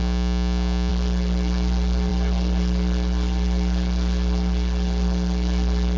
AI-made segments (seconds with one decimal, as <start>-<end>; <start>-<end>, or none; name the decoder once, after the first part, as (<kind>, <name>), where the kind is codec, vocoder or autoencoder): 0.9-6.0 (codec, SNAC)